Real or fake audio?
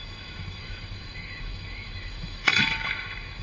fake